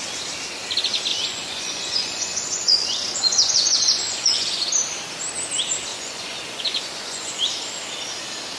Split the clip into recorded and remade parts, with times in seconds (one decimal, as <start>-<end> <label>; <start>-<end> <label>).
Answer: 0.0-1.1 recorded; 1.1-4.6 remade; 4.6-5.9 recorded; 5.9-7.4 remade; 7.4-8.6 recorded